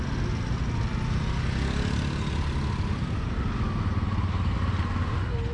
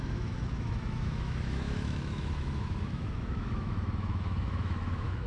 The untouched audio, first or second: first